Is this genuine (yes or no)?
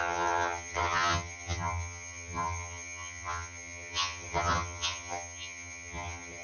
no